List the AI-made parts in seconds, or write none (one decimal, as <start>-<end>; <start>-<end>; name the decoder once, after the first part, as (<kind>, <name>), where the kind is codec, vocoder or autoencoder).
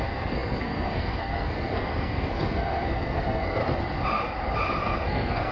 0.0-3.6 (codec, SNAC); 4.8-5.5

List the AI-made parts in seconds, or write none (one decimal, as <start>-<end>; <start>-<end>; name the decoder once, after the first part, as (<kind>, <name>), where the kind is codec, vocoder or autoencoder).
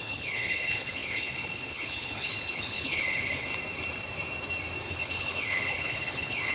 0.0-3.5 (codec, HILCodec); 4.9-6.5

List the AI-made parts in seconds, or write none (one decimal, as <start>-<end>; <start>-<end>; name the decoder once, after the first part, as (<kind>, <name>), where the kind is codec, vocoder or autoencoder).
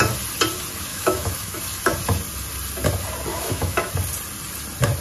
0.9-1.6 (autoencoder, DAC-VAE); 3.3-3.9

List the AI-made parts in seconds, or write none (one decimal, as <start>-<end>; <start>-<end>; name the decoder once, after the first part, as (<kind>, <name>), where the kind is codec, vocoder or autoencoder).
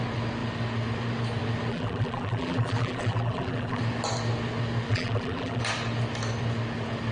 1.7-3.8 (vocoder, BigVGAN v2); 4.9-5.6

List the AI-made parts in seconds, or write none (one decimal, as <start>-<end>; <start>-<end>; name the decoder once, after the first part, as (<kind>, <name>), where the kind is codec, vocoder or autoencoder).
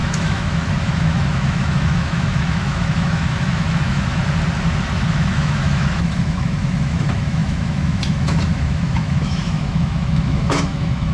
0.0-4.2 (autoencoder, DAC-VAE); 5.1-11.1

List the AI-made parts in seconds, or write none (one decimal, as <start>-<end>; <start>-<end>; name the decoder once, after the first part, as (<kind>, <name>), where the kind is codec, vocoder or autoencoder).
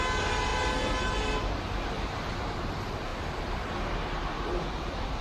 3.1-3.7 (vocoder, BigVGAN v2)